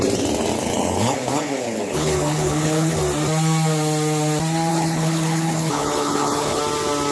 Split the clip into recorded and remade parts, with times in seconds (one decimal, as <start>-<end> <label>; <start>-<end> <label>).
0.0-0.6 recorded; 0.6-3.0 remade; 3.0-4.7 recorded; 4.7-6.6 remade; 6.6-7.1 recorded